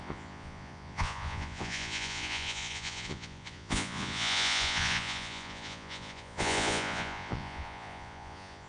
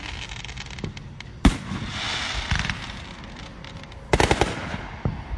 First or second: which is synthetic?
first